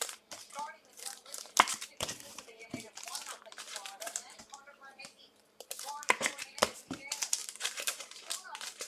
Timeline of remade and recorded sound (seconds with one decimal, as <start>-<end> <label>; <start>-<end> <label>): 0.0-8.9 remade